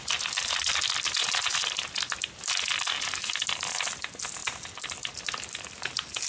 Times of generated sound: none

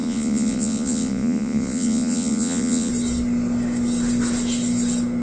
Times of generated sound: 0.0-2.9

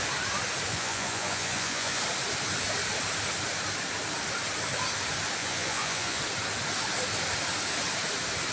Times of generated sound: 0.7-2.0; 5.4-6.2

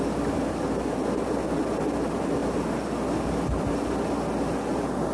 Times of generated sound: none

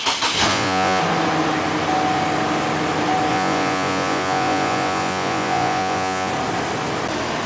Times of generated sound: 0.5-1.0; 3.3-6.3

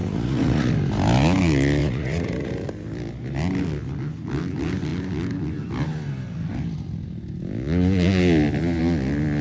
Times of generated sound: 0.0-0.7; 1.8-2.5

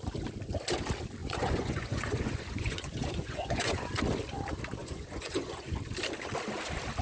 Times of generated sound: 1.2-3.9; 4.8-5.8